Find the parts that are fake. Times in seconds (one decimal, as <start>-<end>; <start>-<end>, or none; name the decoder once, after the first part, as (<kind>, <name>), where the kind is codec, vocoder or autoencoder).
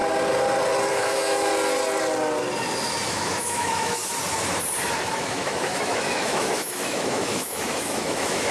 0.9-1.5 (autoencoder, DAC-VAE); 3.1-4.0; 5.1-8.5